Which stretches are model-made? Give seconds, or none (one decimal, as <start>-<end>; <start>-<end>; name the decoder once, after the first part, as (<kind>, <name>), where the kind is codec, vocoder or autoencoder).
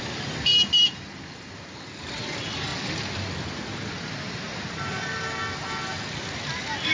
0.5-1.0 (vocoder, BigVGAN v2)